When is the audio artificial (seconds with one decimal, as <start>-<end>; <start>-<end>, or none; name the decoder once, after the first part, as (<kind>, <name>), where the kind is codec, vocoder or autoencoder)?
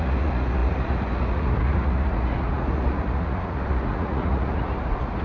0.0-5.2 (vocoder, Vocos)